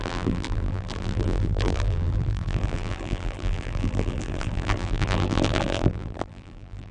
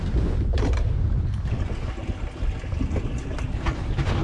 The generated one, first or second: first